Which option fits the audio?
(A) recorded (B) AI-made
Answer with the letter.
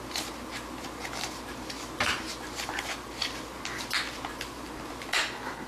A